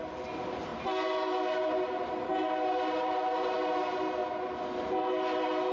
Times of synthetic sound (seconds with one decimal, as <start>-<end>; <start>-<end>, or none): 0.0-4.2; 5.0-5.7